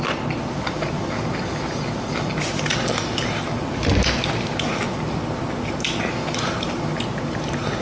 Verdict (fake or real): real